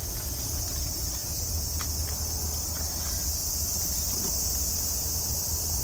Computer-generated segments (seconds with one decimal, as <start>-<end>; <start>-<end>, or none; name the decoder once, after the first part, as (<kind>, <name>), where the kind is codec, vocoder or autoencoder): 0.0-0.6 (vocoder, Vocos)